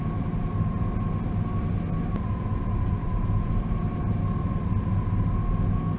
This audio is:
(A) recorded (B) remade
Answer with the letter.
A